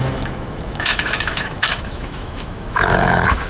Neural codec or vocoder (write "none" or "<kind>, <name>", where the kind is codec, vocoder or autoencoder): autoencoder, DAC-VAE